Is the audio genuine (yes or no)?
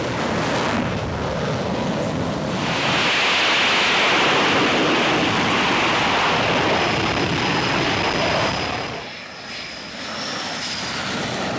yes